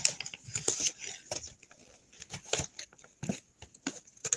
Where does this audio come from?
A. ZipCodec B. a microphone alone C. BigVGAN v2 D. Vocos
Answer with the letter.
B